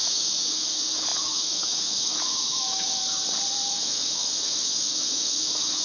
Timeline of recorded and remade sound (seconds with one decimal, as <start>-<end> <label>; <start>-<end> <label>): 0.0-3.0 remade; 3.0-3.7 recorded; 3.7-5.8 remade